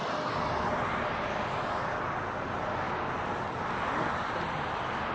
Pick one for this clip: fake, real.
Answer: real